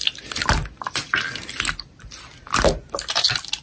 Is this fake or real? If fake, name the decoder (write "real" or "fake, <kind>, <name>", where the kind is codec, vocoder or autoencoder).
real